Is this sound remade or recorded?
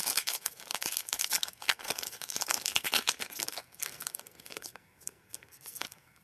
remade